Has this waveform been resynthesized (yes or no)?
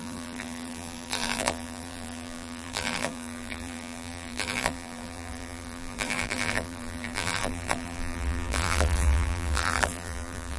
yes